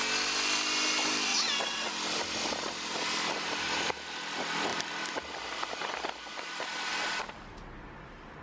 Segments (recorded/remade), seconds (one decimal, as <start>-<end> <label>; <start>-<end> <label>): 0.0-1.3 recorded; 1.3-1.9 remade; 1.9-8.4 recorded